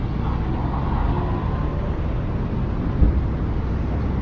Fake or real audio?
real